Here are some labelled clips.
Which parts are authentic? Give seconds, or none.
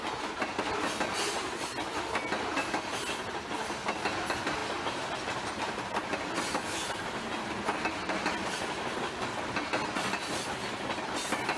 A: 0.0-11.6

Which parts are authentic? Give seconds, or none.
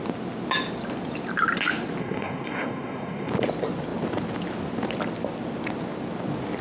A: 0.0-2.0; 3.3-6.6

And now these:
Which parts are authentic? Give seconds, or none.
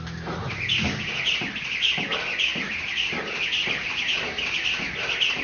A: 0.0-5.4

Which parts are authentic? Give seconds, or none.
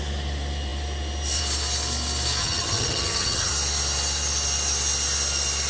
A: 0.0-2.4; 3.5-5.7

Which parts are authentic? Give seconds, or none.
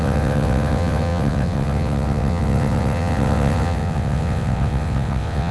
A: none